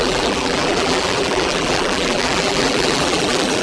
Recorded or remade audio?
remade